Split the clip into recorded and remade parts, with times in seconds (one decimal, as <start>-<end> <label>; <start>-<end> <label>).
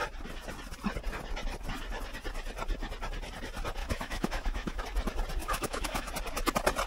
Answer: 0.0-3.8 recorded; 3.8-4.8 remade; 4.8-5.4 recorded; 5.4-6.1 remade; 6.1-6.9 recorded